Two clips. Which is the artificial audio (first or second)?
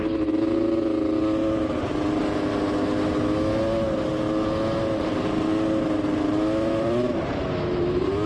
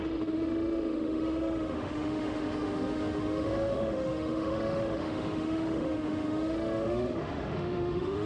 second